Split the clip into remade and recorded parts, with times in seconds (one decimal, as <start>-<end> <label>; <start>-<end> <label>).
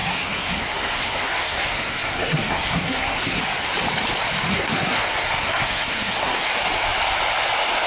0.0-3.4 remade; 3.4-4.5 recorded; 4.5-6.5 remade; 6.5-7.9 recorded